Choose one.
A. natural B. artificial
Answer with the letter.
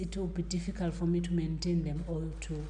A